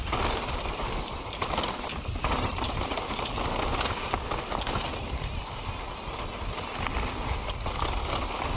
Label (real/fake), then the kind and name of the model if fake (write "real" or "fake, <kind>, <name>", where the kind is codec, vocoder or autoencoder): real